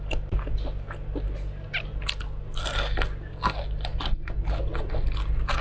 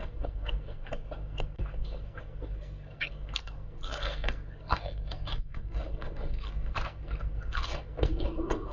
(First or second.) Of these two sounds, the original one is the first